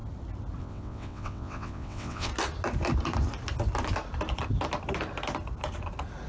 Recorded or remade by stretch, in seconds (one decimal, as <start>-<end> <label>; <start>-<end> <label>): 0.0-0.6 recorded; 0.6-2.3 remade; 2.3-6.3 recorded